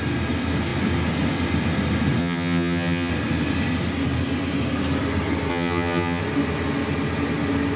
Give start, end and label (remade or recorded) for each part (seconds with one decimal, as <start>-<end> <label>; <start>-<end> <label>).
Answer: 0.0-2.2 recorded; 2.2-3.1 remade; 3.1-5.5 recorded; 5.5-6.2 remade; 6.2-7.8 recorded